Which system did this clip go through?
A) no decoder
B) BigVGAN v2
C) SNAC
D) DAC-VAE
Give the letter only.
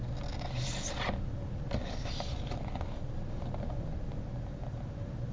A